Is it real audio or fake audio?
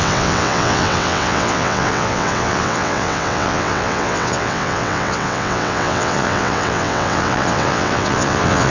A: fake